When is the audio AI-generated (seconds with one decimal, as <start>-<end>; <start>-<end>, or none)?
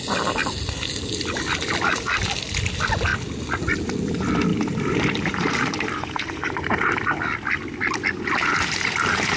4.5-6.9; 8.4-9.4